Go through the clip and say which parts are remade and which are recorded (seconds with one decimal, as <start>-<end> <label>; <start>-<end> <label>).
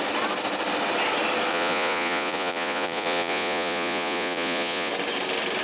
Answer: 0.0-1.5 recorded; 1.5-4.9 remade; 4.9-5.6 recorded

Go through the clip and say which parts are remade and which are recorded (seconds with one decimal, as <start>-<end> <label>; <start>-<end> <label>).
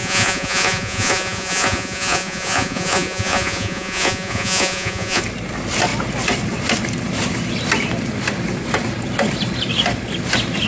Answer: 0.0-5.2 remade; 5.2-10.7 recorded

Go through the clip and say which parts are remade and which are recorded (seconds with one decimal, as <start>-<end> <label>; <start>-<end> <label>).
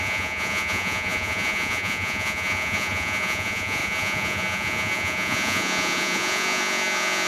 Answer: 0.0-7.3 remade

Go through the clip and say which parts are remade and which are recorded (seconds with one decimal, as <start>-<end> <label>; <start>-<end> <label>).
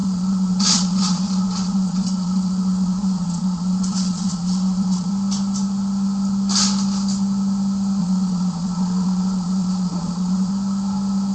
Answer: 0.0-5.1 remade; 5.1-8.0 recorded; 8.0-10.5 remade; 10.5-11.3 recorded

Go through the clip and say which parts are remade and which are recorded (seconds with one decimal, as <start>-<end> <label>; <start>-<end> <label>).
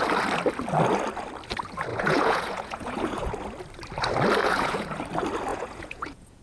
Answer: 0.0-1.9 recorded; 1.9-3.3 remade; 3.3-4.4 recorded; 4.4-5.0 remade; 5.0-5.5 recorded; 5.5-6.4 remade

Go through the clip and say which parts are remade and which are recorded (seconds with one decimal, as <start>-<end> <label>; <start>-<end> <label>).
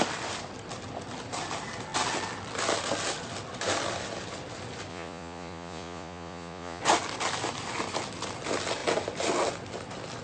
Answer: 0.0-4.9 recorded; 4.9-6.8 remade; 6.8-10.2 recorded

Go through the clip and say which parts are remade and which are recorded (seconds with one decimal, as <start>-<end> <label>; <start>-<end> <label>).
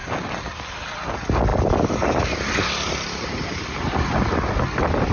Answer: 0.0-5.1 recorded